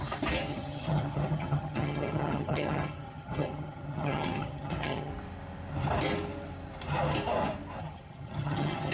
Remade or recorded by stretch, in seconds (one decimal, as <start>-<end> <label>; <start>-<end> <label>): 0.0-0.5 recorded; 0.5-5.1 remade; 5.1-7.8 recorded; 7.8-8.9 remade